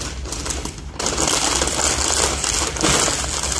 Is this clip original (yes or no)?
yes